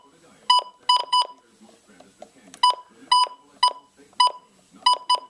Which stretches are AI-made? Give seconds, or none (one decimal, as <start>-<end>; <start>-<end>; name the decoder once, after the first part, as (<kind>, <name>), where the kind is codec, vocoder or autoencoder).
1.0-1.6 (vocoder, BigVGAN v2)